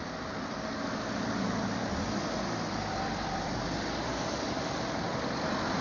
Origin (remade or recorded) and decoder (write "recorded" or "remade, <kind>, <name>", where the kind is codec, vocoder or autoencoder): recorded